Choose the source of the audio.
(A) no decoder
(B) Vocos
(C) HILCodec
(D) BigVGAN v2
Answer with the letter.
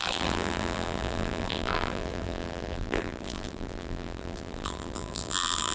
D